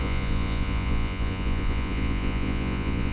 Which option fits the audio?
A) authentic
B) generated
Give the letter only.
B